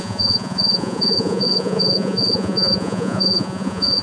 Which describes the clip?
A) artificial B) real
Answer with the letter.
A